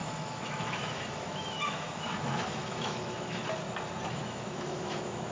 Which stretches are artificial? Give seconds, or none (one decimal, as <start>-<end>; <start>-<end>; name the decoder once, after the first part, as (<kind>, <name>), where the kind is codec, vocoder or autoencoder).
0.0-3.4 (autoencoder, DAC-VAE); 4.1-5.3